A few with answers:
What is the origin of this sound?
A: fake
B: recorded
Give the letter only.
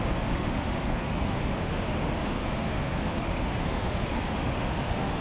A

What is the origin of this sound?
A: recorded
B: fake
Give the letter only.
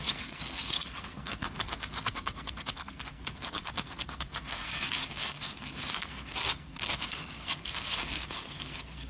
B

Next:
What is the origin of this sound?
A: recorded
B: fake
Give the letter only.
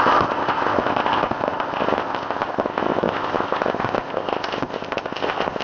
B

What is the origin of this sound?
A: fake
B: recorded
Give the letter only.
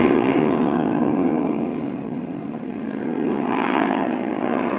A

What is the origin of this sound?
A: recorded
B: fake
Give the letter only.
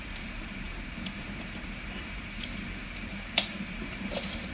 B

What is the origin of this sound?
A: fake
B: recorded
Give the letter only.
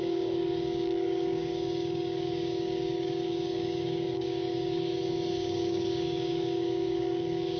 A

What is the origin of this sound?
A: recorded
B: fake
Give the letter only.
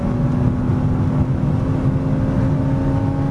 A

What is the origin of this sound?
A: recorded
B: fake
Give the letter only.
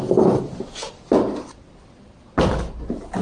A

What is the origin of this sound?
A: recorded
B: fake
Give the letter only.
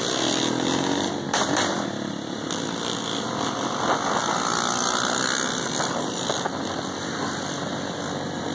A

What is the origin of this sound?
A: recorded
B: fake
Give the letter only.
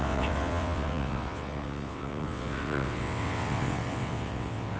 B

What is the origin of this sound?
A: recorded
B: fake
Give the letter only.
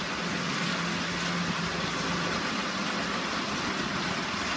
A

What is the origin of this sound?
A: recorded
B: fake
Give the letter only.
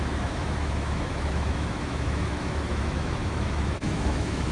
B